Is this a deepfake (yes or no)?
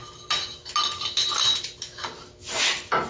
no